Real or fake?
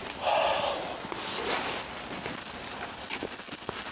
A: real